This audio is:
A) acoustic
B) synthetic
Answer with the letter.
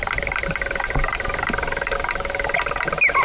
A